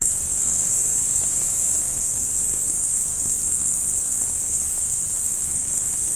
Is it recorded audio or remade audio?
remade